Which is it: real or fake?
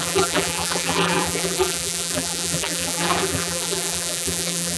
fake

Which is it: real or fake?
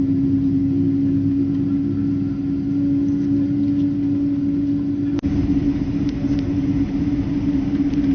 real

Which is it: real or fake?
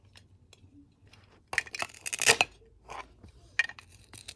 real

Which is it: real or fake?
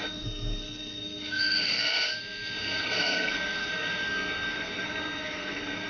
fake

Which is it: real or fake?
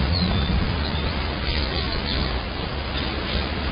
fake